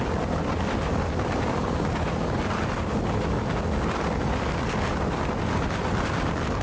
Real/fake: real